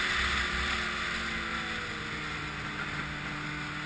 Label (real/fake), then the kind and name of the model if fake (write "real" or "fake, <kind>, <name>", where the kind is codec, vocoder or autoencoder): real